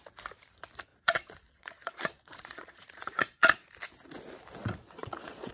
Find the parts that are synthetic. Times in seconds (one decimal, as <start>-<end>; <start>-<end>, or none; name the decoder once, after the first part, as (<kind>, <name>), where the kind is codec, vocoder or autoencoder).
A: 0.9-3.7 (vocoder, Vocos); 4.6-5.5